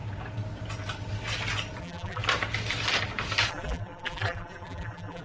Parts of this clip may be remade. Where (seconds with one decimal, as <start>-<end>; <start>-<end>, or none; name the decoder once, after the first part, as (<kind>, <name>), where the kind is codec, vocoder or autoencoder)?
1.8-2.2 (vocoder, BigVGAN v2); 3.5-5.2